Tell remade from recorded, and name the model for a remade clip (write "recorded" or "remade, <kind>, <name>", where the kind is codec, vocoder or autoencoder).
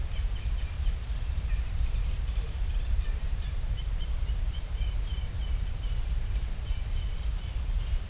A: remade, vocoder, BigVGAN v2